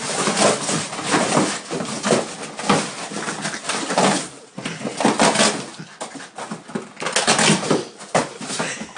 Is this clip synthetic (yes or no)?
no